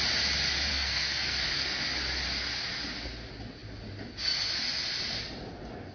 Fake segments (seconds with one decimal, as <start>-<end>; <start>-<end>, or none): 0.7-1.8